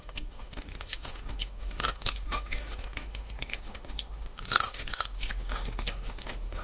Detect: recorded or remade remade